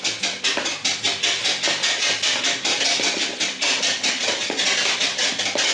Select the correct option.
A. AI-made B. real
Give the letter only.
B